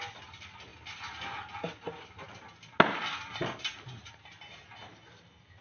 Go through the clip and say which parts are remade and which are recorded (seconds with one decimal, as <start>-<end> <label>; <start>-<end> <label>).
0.0-5.6 recorded